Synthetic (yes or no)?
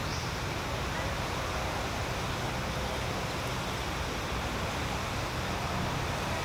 no